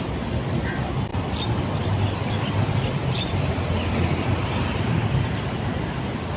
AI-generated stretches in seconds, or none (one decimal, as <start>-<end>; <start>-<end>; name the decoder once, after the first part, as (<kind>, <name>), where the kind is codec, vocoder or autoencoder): none